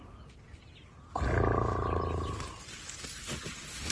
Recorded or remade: recorded